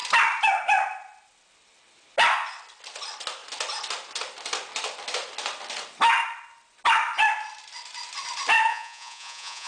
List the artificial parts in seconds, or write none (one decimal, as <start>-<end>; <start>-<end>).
8.7-9.7